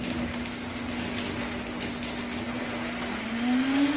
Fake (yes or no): no